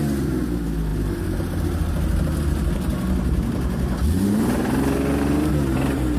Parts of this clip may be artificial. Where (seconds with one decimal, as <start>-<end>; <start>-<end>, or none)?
none